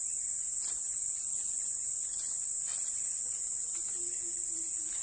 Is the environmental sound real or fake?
real